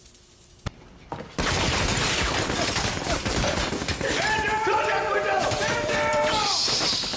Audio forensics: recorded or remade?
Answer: remade